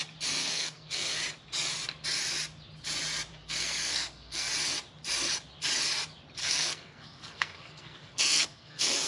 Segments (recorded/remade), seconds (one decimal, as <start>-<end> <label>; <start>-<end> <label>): 0.0-0.4 recorded; 0.4-1.2 remade; 1.2-3.3 recorded; 3.3-4.5 remade; 4.5-6.4 recorded; 6.4-9.1 remade